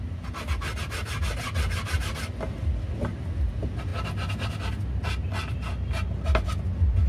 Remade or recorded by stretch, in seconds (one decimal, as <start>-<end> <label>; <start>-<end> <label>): 0.0-7.1 recorded